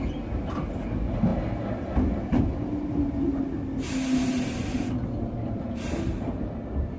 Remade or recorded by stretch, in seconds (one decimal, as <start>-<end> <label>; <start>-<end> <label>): 0.0-7.0 recorded